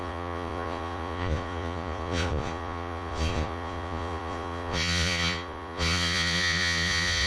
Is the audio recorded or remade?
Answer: remade